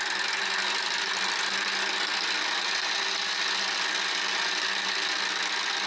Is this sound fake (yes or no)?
no